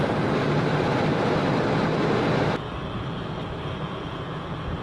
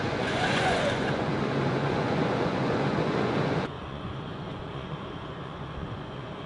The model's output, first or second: second